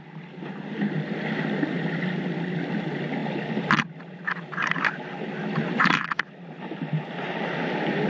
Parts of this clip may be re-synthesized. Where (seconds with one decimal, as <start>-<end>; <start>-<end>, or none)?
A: none